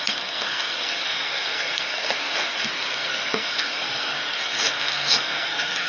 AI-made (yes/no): yes